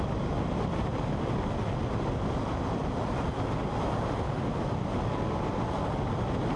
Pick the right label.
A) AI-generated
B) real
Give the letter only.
B